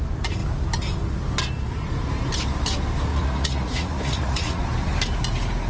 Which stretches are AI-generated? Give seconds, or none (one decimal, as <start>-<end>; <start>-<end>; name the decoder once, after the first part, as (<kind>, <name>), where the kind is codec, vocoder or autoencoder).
3.1-4.6 (vocoder, Vocos)